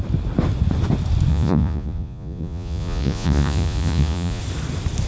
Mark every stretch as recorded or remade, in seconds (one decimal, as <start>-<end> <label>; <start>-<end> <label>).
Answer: 0.0-1.3 recorded; 1.3-4.4 remade; 4.4-5.1 recorded